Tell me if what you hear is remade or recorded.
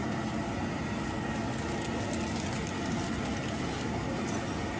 recorded